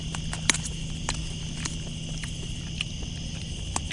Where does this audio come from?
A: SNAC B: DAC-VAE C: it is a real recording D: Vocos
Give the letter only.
C